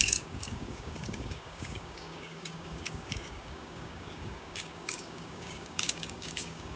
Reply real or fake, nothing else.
fake